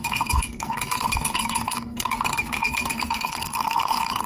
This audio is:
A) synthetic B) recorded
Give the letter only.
A